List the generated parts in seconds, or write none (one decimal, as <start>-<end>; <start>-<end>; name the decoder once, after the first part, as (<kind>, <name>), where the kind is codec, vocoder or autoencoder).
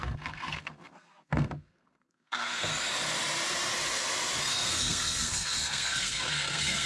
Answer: 0.0-2.7 (codec, SNAC); 4.4-6.9